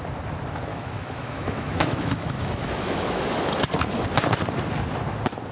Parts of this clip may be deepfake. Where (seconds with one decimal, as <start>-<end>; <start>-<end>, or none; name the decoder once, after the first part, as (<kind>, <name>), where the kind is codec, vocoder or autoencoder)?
0.7-3.5 (autoencoder, DAC-VAE)

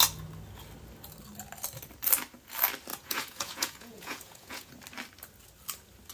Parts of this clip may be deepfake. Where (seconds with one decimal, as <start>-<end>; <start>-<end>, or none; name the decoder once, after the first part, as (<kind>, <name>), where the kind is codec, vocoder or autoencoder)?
2.9-4.7 (vocoder, Vocos)

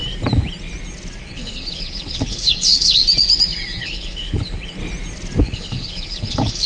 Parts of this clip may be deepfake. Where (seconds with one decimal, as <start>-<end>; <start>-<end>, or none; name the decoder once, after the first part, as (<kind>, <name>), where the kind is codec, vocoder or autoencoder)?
1.2-3.0 (codec, HILCodec); 3.8-4.8; 5.4-6.7

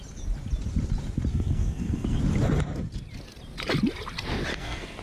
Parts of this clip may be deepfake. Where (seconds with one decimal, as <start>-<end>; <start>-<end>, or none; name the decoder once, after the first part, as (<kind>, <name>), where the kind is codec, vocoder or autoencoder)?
1.3-2.2 (codec, SNAC); 4.5-5.0

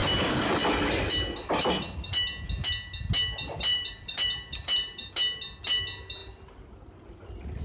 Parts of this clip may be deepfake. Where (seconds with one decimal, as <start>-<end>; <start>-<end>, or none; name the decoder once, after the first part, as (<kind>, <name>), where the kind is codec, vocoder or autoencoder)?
3.7-5.1 (vocoder, BigVGAN v2)

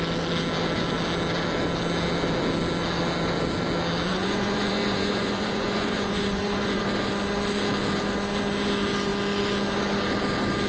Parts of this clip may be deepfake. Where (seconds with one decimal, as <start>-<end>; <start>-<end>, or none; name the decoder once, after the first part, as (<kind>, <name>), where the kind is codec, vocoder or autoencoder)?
4.1-6.8 (vocoder, Vocos)